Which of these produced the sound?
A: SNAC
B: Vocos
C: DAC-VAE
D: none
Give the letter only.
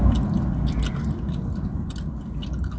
D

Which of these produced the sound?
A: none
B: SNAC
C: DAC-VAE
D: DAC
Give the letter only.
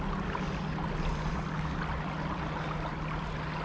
A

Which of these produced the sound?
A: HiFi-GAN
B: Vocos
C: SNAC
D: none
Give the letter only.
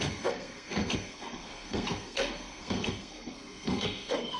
C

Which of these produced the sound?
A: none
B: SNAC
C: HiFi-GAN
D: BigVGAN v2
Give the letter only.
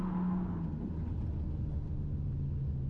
A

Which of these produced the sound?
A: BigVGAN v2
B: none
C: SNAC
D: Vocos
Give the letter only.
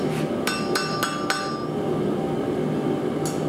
B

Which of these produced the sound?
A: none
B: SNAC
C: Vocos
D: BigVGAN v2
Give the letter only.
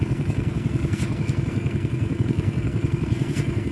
B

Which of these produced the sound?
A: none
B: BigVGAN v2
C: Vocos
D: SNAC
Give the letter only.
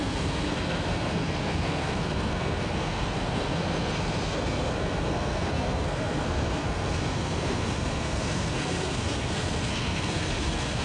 D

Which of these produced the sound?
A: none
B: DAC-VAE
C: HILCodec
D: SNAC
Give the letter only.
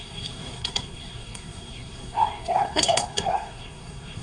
D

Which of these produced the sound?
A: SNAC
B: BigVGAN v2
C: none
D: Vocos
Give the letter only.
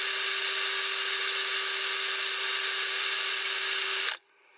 C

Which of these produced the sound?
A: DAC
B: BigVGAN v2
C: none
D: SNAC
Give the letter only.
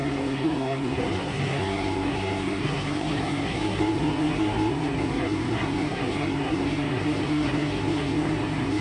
D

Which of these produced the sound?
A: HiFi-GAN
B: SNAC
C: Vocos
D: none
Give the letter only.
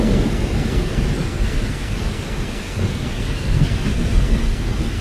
B